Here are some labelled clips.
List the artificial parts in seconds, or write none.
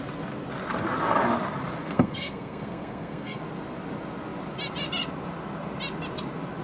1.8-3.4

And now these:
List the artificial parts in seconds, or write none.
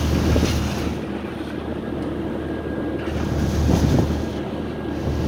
none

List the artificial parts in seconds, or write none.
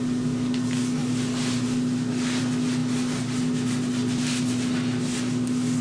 none